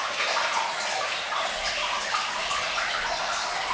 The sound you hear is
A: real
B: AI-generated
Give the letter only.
A